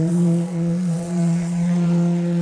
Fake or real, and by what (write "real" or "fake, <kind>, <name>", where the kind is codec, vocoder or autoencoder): fake, vocoder, Vocos